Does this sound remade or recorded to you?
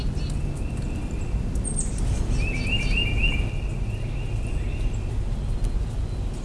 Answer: recorded